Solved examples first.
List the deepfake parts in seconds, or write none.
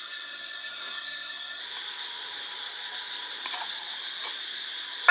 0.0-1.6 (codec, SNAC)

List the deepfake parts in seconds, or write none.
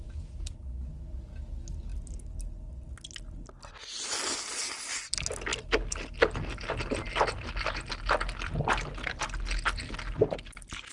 none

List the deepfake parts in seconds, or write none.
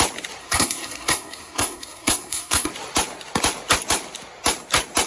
0.4-2.7 (codec, SNAC)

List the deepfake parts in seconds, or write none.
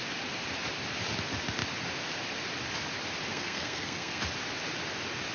3.3-4.2 (codec, SNAC)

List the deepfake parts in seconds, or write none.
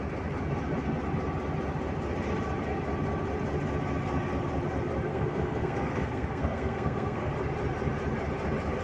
5.1-7.3 (codec, SNAC)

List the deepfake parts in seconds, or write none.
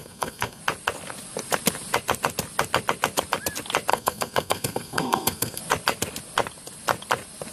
0.0-0.6 (codec, SNAC); 3.9-5.6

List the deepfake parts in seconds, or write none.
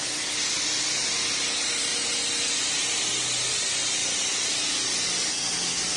5.3-6.0 (codec, SNAC)